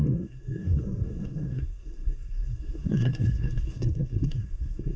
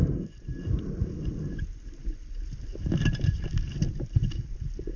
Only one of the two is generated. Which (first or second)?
first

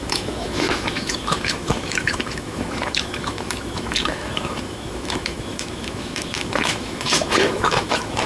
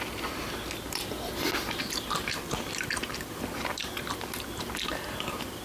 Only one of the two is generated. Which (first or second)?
first